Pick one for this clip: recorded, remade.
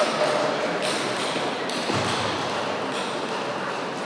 recorded